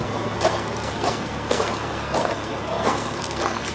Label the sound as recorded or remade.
remade